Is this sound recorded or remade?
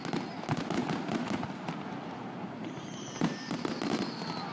recorded